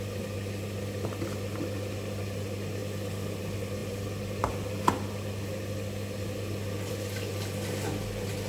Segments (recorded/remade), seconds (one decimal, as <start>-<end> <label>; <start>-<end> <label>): 0.0-8.5 recorded